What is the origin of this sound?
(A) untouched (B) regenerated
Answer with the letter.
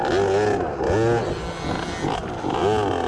A